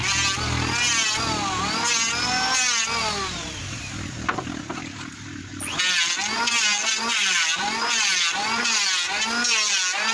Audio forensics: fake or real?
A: real